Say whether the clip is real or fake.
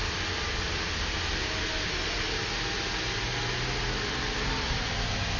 real